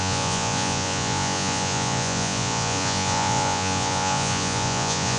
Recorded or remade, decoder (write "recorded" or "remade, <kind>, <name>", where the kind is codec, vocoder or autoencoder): remade, vocoder, Vocos